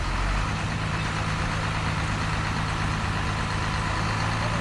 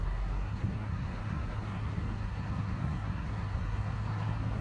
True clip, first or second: first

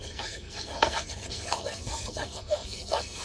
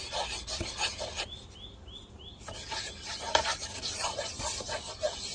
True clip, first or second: second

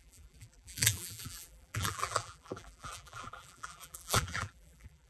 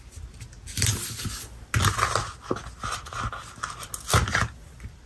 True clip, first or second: second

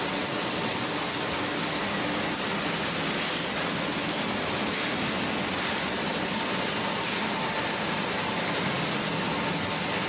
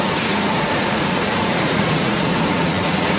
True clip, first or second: first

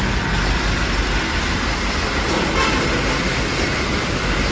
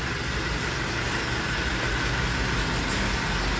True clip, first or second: second